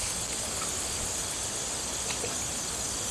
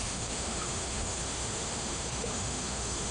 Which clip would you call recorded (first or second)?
first